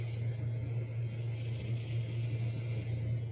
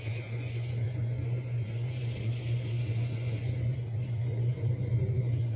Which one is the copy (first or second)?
second